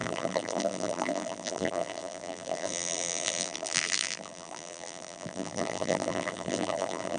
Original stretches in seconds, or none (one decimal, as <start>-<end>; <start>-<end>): none